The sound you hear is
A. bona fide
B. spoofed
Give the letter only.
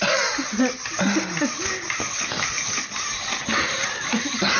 A